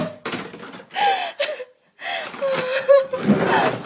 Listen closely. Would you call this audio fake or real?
real